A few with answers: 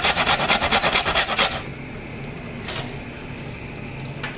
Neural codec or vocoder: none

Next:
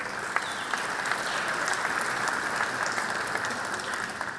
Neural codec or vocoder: none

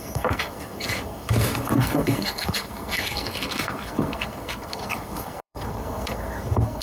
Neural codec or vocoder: codec, SNAC